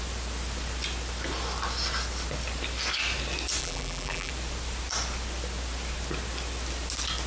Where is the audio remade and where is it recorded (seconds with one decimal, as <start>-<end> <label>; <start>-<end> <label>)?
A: 0.0-3.6 recorded; 3.6-4.3 remade; 4.3-7.3 recorded